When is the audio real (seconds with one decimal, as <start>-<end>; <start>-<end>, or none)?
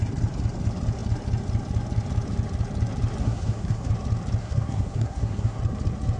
0.0-3.2; 3.9-4.4; 5.6-6.2